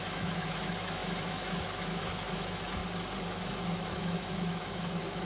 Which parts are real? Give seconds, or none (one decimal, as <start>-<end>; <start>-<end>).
2.8-3.4